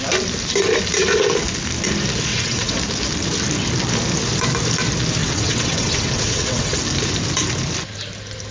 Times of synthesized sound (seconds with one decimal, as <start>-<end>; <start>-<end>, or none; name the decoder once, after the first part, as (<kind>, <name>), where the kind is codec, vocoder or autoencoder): 2.3-2.8 (vocoder, WaveNeXt); 5.2-6.7